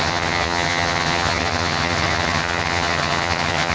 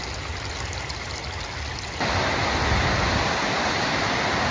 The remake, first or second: first